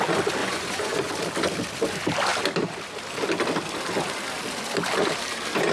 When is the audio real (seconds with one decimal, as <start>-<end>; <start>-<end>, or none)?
0.0-0.4; 1.1-5.7